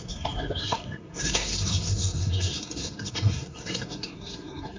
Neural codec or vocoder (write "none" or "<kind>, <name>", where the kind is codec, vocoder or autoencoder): codec, SNAC